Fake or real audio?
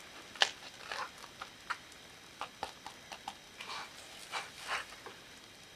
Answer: real